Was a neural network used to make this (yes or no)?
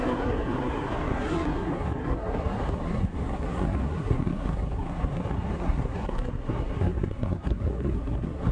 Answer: yes